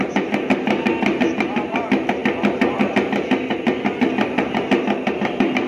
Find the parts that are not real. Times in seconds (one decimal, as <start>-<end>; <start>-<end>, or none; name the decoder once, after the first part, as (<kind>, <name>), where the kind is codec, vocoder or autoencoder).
none

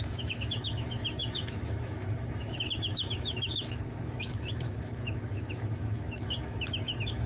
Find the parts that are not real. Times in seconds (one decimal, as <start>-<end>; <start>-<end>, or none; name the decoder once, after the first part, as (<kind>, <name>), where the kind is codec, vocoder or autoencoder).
0.0-7.3 (autoencoder, DAC-VAE)

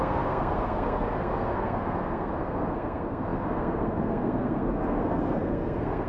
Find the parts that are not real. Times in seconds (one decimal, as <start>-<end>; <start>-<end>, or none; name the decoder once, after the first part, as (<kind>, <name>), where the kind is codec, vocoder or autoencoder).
0.0-6.1 (codec, SNAC)

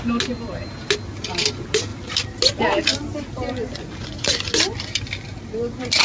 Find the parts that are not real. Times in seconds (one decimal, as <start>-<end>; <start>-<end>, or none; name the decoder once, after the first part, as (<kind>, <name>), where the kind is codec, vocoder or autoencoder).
3.7-4.3 (vocoder, Vocos)

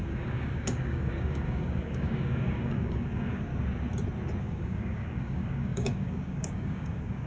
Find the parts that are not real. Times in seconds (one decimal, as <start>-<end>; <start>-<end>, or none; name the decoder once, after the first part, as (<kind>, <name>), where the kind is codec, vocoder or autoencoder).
0.0-3.5 (codec, DAC); 4.4-7.3

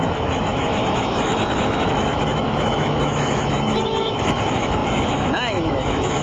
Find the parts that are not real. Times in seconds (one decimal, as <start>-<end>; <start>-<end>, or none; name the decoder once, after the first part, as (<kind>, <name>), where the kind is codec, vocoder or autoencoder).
0.0-6.2 (autoencoder, DAC-VAE)

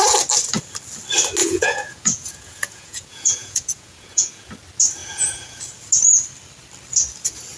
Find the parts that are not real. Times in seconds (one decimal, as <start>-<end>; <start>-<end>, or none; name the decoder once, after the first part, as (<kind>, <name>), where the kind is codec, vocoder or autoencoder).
1.4-4.5 (vocoder, Vocos); 5.0-5.6